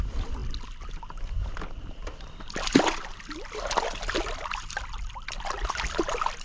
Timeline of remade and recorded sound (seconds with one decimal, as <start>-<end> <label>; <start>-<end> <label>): 0.0-6.4 recorded